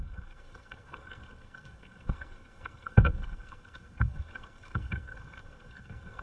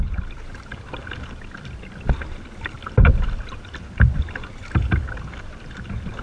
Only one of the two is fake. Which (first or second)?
first